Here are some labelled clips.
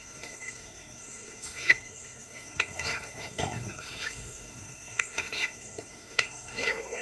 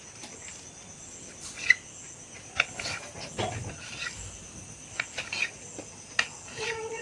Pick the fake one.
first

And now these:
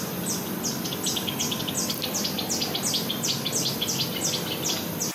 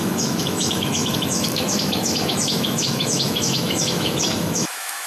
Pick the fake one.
second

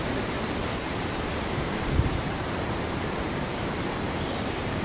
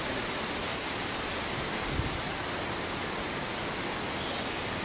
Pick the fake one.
first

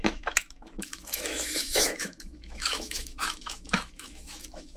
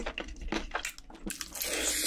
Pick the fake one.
first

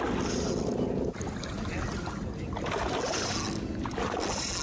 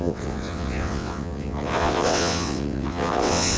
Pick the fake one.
second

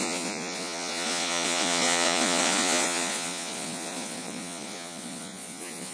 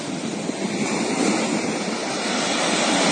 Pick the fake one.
first